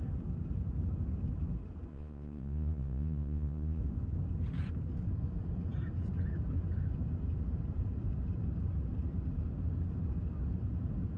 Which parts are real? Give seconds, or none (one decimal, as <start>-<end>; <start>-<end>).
0.0-1.9; 3.8-11.2